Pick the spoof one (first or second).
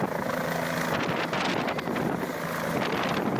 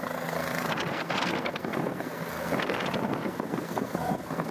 second